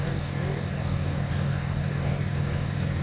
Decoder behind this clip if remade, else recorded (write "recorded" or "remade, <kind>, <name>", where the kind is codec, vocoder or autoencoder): remade, codec, DAC